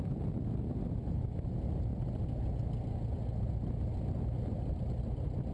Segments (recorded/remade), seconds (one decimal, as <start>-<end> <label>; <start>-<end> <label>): 0.0-5.5 recorded